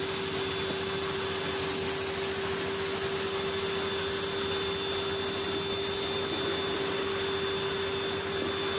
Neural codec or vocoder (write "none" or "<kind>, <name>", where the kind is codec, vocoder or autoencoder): none